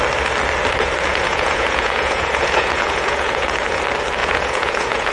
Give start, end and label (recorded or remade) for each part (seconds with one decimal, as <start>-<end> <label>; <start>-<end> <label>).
0.0-1.1 recorded; 1.1-3.8 remade; 3.8-4.2 recorded; 4.2-5.1 remade